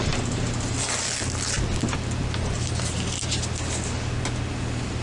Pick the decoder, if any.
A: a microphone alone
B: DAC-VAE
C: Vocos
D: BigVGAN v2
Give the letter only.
A